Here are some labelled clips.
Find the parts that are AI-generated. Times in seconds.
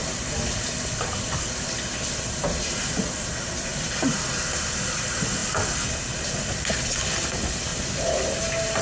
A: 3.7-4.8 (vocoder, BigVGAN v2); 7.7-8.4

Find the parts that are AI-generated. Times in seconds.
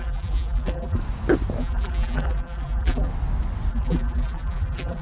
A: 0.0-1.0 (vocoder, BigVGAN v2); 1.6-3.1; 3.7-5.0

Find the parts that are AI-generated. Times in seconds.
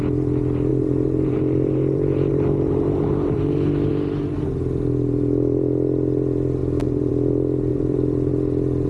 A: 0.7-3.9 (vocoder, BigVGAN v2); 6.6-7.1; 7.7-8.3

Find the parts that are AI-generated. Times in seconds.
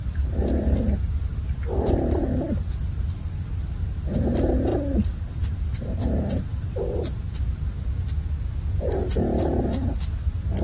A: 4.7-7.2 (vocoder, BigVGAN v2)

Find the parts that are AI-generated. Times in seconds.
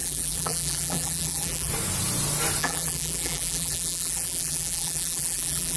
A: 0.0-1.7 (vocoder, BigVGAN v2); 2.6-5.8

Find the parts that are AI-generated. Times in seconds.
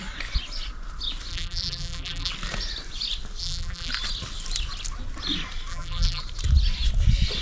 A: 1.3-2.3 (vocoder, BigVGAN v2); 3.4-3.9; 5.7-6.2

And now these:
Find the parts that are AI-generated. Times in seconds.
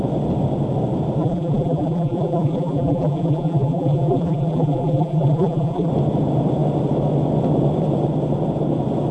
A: 1.2-5.9 (vocoder, BigVGAN v2)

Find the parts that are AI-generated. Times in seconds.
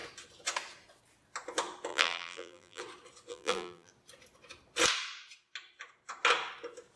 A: 1.9-2.8 (vocoder, BigVGAN v2); 3.3-3.9